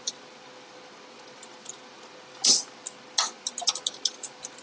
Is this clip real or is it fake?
real